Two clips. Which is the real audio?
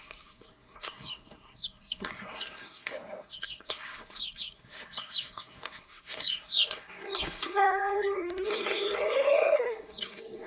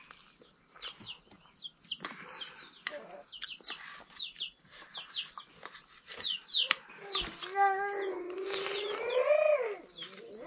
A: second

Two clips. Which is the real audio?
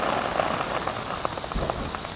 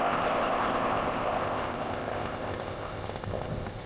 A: first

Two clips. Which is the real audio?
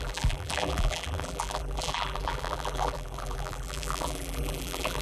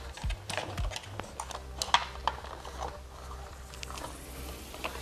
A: second